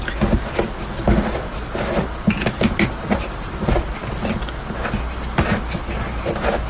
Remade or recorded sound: recorded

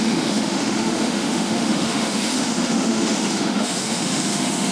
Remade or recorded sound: remade